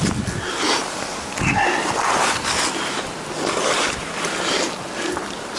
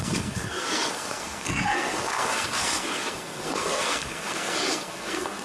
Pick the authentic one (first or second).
first